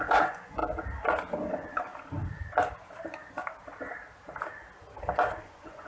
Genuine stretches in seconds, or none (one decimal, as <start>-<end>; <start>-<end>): 0.6-1.4; 1.9-5.4